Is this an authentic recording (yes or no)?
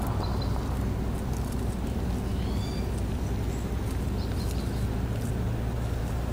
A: yes